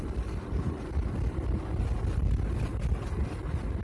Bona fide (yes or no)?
yes